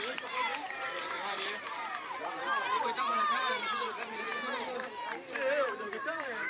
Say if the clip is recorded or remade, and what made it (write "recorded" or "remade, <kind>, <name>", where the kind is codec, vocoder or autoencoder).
remade, vocoder, BigVGAN v2